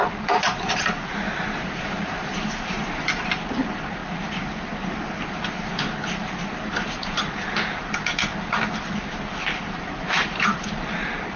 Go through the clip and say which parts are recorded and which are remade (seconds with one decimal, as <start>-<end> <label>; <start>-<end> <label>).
0.0-4.0 remade; 4.0-6.7 recorded; 6.7-8.3 remade; 8.3-9.6 recorded; 9.6-11.4 remade